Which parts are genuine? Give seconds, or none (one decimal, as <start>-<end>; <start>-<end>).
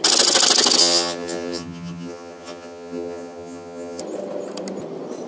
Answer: 0.0-0.8; 4.0-5.3